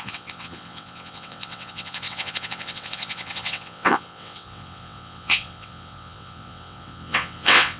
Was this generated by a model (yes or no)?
yes